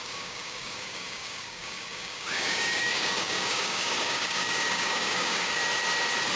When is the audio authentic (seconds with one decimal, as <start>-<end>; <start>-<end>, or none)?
5.6-6.4